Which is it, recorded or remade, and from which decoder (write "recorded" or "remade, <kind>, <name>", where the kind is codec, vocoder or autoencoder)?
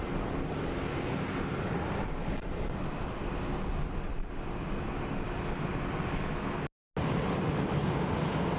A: recorded